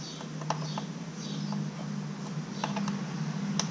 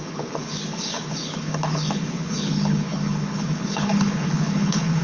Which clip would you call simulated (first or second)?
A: second